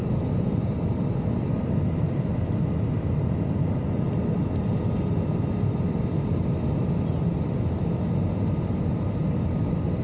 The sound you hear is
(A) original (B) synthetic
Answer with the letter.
A